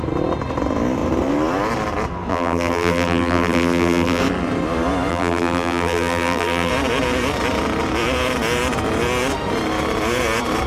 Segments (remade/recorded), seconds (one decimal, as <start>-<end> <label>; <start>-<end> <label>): 0.0-2.3 recorded; 2.3-4.2 remade; 4.2-5.1 recorded; 5.1-6.7 remade; 6.7-10.7 recorded